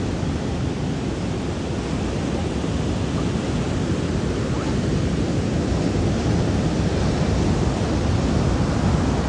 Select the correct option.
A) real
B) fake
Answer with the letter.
A